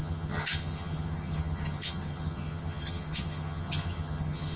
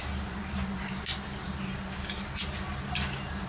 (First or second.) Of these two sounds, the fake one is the first